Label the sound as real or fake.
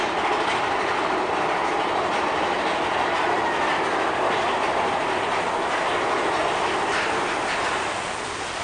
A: real